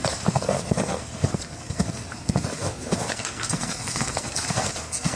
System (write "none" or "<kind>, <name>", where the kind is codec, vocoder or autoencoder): codec, SNAC